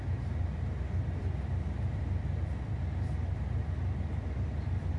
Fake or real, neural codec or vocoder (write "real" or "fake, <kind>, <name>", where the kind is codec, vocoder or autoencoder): fake, vocoder, BigVGAN v2